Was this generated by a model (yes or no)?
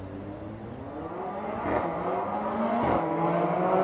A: no